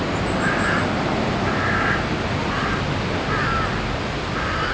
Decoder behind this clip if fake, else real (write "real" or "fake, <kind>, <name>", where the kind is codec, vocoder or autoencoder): real